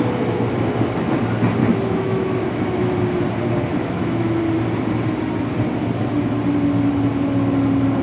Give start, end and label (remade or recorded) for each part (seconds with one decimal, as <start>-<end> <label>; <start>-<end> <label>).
0.0-1.6 recorded; 1.6-2.9 remade; 2.9-3.8 recorded; 3.8-4.4 remade; 4.4-8.0 recorded